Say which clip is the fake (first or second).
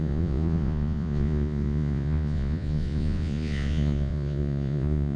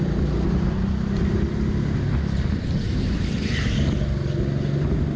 first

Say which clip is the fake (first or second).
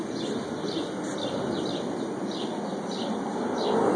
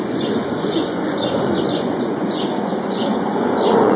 second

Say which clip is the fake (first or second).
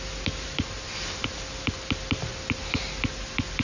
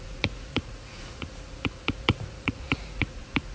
second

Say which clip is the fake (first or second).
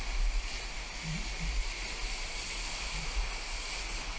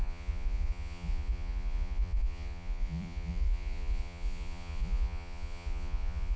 second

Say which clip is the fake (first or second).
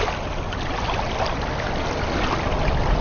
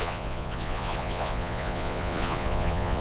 second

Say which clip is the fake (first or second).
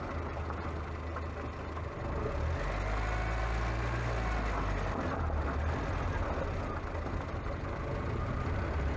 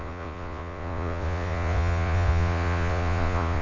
second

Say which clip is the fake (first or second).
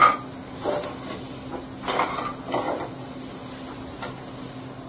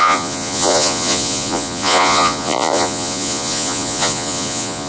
second